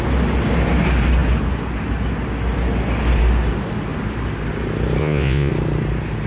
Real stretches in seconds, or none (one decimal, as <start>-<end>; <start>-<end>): 0.0-5.0; 5.5-6.3